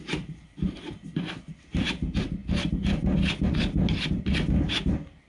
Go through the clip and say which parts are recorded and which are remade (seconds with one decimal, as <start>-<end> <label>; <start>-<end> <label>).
0.0-5.3 recorded